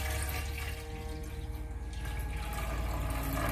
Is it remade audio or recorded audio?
recorded